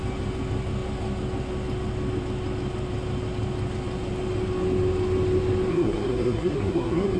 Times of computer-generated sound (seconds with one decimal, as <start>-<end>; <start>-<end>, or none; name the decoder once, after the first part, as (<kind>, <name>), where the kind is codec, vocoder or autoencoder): 5.7-7.2 (codec, SNAC)